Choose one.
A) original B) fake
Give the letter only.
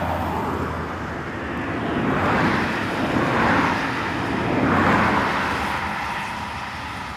A